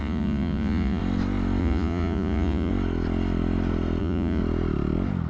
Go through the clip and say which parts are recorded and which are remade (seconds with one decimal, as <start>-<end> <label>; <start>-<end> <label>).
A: 0.0-1.0 remade; 1.0-1.6 recorded; 1.6-2.7 remade; 2.7-4.0 recorded; 4.0-4.4 remade; 4.4-5.3 recorded